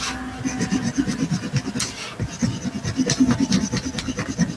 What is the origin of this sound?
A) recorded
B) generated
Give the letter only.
A